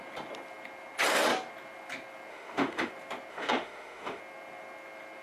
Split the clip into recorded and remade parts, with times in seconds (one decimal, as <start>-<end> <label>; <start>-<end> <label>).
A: 0.0-2.3 recorded; 2.3-2.9 remade; 2.9-3.3 recorded; 3.3-4.2 remade; 4.2-5.2 recorded